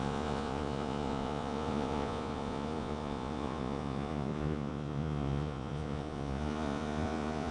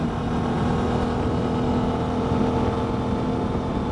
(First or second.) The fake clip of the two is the first